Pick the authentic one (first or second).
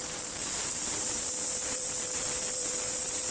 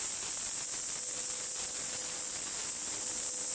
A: second